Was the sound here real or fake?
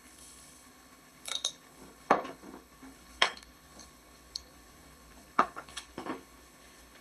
fake